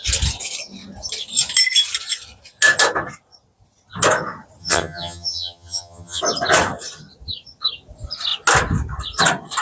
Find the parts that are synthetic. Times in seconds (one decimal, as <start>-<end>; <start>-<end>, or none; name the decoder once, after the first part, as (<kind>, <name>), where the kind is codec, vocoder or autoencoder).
4.6-6.2 (vocoder, HiFi-GAN)